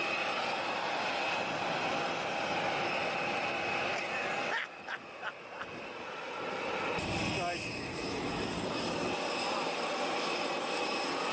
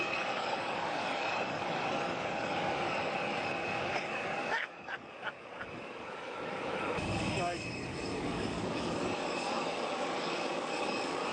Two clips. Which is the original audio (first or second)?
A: first